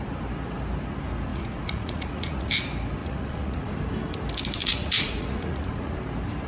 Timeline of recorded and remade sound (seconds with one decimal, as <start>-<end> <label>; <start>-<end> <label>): 0.0-1.3 recorded; 1.3-2.5 remade; 2.5-3.0 recorded; 3.0-3.7 remade; 3.7-4.6 recorded; 4.6-5.9 remade; 5.9-6.5 recorded